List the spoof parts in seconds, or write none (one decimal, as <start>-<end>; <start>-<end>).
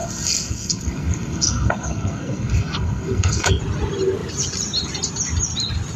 0.0-3.6